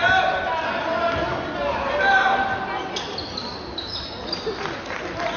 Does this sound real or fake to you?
real